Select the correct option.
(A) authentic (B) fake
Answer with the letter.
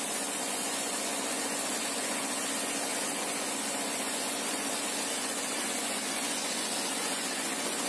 B